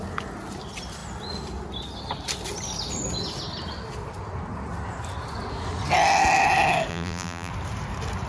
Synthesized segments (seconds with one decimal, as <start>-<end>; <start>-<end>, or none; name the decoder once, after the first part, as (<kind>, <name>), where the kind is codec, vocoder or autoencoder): 6.9-7.5 (vocoder, BigVGAN v2)

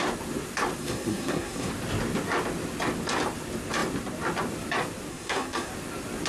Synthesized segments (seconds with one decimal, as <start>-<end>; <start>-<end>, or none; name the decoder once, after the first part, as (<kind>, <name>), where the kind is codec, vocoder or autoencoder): 0.8-1.7 (codec, SNAC); 5.1-5.7

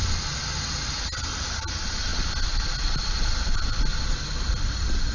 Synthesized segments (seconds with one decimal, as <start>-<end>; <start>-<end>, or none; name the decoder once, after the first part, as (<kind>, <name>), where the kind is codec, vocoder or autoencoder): none

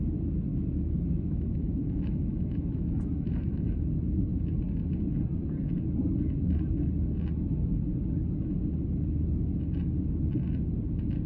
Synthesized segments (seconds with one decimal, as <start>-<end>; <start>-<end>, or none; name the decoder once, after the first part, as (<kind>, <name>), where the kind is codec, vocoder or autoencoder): 0.5-3.9 (autoencoder, DAC-VAE)

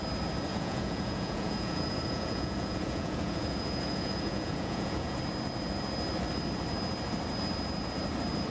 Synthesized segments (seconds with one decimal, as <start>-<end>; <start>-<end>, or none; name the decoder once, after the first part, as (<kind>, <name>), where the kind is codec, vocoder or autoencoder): 0.5-5.2 (vocoder, Vocos)